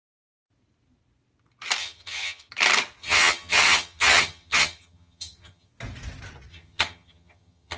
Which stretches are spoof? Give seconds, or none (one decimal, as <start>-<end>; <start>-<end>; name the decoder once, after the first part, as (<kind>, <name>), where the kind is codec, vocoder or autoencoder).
1.8-2.5 (vocoder, HiFi-GAN); 3.0-5.7; 6.5-7.8